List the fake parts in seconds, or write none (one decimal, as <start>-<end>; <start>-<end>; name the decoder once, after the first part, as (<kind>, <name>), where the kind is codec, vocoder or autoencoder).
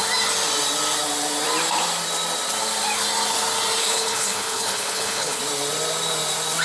3.8-5.4 (codec, HILCodec)